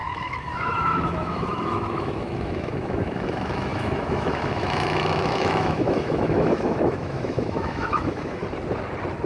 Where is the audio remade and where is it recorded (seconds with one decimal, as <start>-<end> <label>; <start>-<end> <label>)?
0.0-8.4 remade; 8.4-9.3 recorded